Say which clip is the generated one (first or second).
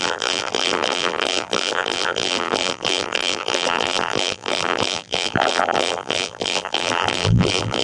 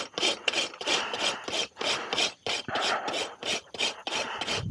first